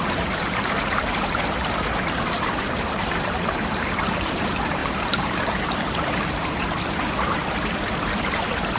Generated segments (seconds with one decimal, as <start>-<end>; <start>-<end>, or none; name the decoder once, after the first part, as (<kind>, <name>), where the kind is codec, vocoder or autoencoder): 0.0-8.8 (vocoder, BigVGAN v2)